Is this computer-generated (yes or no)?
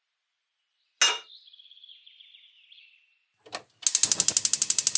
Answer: no